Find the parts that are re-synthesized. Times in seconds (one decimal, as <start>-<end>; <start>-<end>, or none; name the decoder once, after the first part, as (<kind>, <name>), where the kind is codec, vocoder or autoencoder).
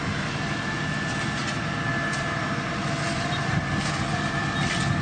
none